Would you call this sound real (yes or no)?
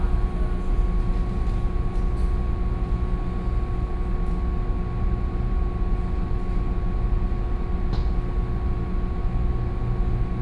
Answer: yes